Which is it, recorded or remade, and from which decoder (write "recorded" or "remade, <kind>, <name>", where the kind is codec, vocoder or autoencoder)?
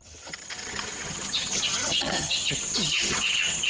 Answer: remade, vocoder, HiFi-GAN